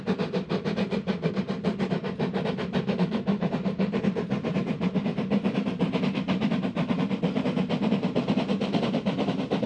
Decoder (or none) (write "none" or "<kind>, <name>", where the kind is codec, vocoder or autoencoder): vocoder, BigVGAN v2